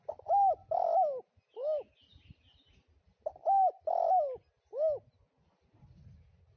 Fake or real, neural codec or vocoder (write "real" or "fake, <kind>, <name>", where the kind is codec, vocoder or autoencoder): real